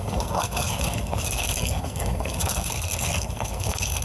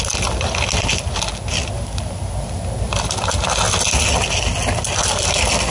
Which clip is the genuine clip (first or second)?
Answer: second